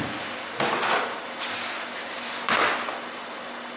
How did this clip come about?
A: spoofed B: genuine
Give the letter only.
B